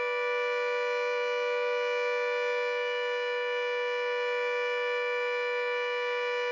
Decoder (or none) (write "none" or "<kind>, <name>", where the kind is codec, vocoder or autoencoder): none